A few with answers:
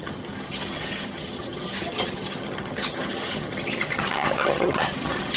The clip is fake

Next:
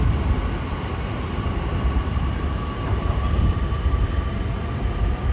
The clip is real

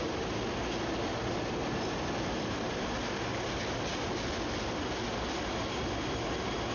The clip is real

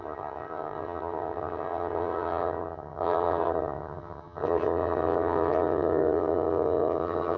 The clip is fake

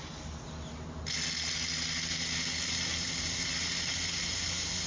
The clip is real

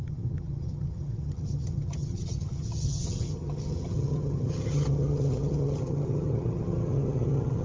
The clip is fake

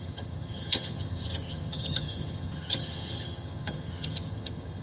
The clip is fake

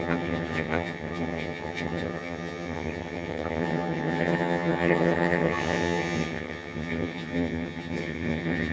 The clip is fake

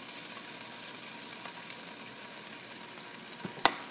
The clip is real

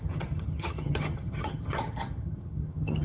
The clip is fake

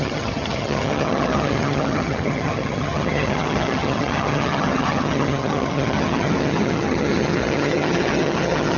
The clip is fake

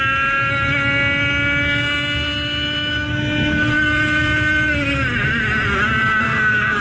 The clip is real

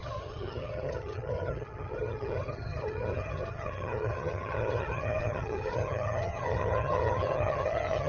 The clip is fake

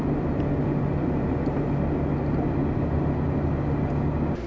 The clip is real